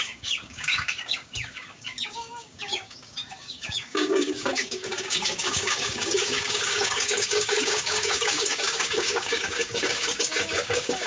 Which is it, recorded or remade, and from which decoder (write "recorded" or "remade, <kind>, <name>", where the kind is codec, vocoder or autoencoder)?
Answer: remade, codec, DAC